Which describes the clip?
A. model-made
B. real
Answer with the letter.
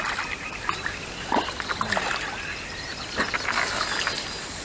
B